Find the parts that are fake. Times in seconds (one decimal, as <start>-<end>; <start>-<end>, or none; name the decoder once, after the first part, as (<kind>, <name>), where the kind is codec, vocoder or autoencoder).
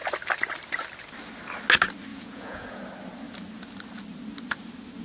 2.1-2.8 (vocoder, Vocos)